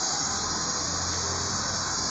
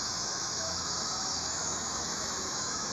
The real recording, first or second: first